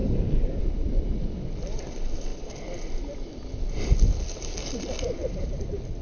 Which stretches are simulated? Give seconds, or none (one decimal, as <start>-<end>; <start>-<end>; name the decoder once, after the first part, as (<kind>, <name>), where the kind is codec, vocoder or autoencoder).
0.0-0.6 (vocoder, BigVGAN v2)